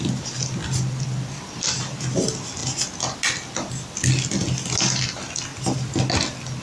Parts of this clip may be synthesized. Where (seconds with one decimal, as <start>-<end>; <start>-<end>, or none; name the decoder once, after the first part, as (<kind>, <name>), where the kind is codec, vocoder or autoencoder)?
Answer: none